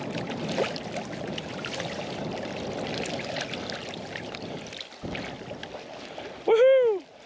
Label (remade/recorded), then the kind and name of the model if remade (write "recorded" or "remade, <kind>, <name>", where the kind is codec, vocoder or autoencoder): recorded